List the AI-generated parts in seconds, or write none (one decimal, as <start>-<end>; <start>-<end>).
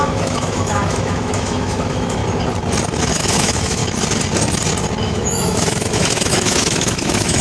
0.0-2.2; 3.1-3.8; 5.0-7.4